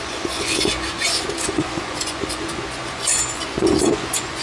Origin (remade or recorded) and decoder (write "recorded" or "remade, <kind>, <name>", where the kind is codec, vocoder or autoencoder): remade, vocoder, Vocos